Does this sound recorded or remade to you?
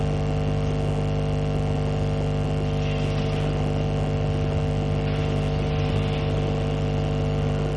recorded